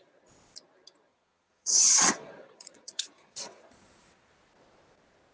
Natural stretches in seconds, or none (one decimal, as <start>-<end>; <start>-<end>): 0.0-1.1; 4.3-5.3